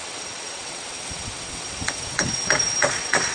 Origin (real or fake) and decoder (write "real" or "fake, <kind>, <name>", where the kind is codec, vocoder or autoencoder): fake, vocoder, WaveNeXt